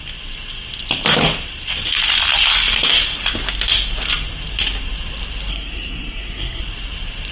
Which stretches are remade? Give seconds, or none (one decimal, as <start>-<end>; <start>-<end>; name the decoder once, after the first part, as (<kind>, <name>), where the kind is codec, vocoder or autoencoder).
5.5-6.6 (codec, SNAC)